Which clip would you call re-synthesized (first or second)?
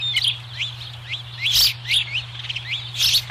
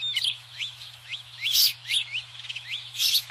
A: second